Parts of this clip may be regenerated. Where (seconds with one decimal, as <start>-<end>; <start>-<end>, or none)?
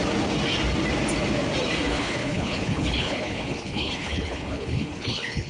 1.9-5.5